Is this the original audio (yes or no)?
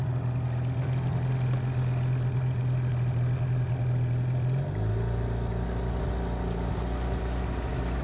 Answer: yes